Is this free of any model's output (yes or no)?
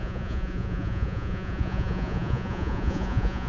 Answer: no